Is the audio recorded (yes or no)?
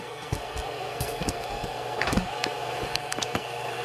no